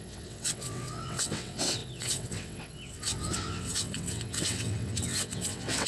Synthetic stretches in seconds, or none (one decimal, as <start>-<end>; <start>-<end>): 0.0-5.9